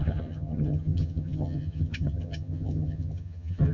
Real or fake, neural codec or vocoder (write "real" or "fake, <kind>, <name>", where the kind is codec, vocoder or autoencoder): fake, vocoder, HiFi-GAN